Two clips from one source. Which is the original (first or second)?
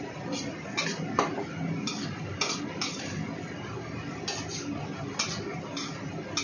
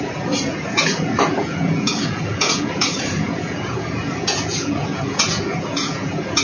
first